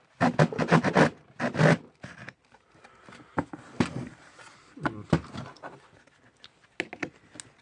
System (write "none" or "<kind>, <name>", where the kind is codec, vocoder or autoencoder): none